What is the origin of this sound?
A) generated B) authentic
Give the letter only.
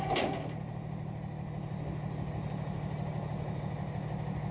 B